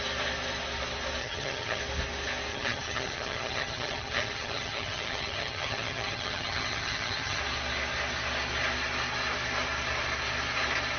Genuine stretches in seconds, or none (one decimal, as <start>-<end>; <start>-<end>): 0.0-1.2; 1.8-2.5; 7.4-11.0